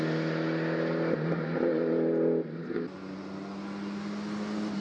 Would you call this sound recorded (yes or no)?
yes